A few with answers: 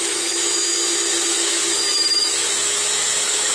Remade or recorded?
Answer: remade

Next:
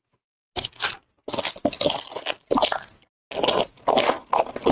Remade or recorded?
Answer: recorded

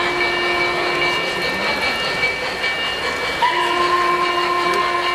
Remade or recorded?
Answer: recorded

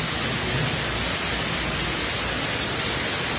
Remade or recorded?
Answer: recorded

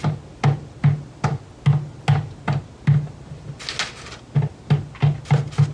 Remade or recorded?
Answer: recorded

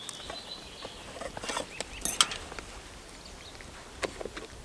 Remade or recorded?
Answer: recorded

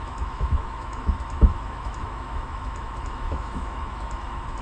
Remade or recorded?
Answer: remade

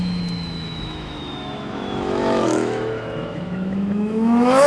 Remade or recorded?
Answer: remade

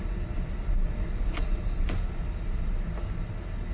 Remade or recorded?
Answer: recorded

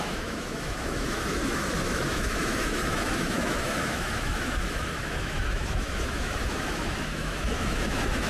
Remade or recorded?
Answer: remade